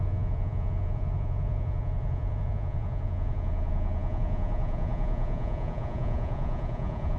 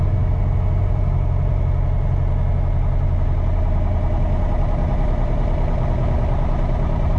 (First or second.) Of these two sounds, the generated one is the first